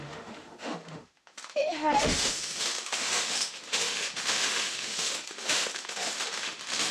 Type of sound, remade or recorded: remade